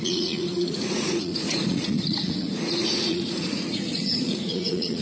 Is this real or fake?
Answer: fake